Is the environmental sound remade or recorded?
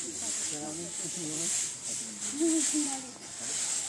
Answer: recorded